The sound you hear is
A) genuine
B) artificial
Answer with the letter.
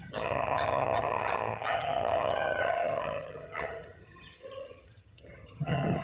B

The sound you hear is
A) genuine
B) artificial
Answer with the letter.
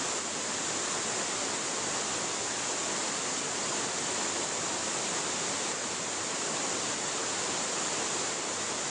A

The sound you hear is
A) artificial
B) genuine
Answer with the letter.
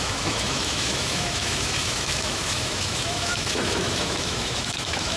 A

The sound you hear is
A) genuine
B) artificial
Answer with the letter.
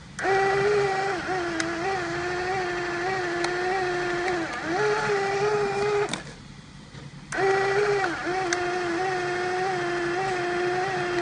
A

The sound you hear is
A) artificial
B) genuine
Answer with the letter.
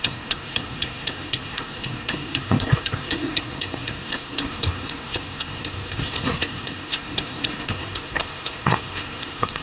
A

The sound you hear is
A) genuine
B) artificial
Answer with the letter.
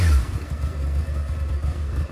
B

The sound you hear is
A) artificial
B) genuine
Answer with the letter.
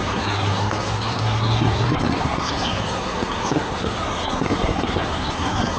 A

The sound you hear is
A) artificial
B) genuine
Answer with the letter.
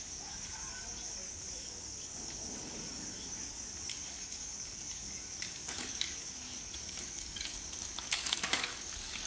A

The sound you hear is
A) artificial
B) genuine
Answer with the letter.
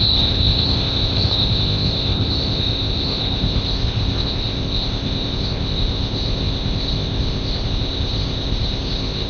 A